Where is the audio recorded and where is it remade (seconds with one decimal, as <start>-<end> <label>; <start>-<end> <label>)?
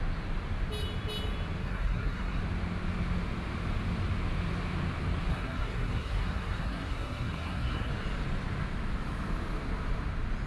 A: 0.0-1.6 recorded; 1.6-2.4 remade; 2.4-5.3 recorded; 5.3-7.9 remade; 7.9-10.5 recorded